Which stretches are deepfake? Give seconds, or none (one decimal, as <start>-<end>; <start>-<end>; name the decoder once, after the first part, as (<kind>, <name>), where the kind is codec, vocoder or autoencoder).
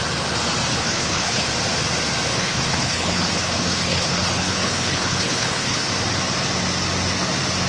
0.7-1.5 (codec, HILCodec); 2.3-5.9